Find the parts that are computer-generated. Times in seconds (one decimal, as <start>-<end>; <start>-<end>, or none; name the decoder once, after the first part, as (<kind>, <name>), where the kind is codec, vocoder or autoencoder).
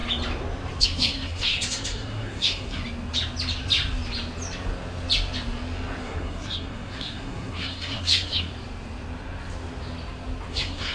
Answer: 0.8-2.8 (codec, SNAC); 6.0-8.5; 10.5-10.9